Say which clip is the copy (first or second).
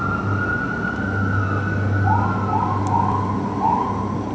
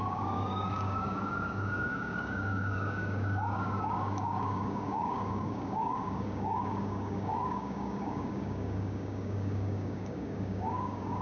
second